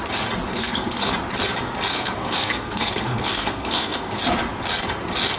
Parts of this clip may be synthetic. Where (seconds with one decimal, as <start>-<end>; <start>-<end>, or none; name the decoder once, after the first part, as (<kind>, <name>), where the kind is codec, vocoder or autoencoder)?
0.5-1.1 (codec, SNAC); 1.9-4.2